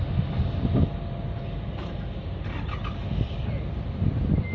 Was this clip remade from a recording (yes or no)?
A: no